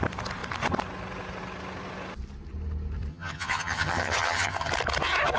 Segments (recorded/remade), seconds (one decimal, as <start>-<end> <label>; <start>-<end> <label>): 0.0-3.1 recorded; 3.1-4.7 remade; 4.7-5.4 recorded